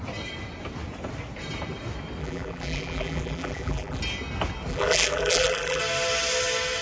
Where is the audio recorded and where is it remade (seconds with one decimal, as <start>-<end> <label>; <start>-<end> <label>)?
0.0-2.2 recorded; 2.2-4.0 remade; 4.0-4.7 recorded; 4.7-5.8 remade; 5.8-6.8 recorded